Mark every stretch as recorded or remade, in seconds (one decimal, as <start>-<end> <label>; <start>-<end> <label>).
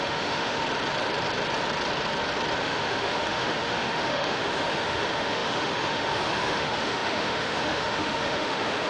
0.0-0.6 remade; 0.6-2.6 recorded; 2.6-8.9 remade